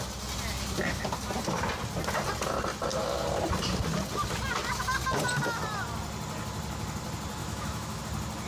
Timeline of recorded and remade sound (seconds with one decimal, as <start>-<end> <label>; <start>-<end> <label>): 0.0-7.4 recorded; 7.4-8.0 remade; 8.0-8.5 recorded